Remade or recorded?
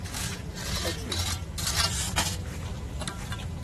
recorded